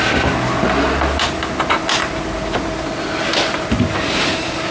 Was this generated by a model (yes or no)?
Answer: no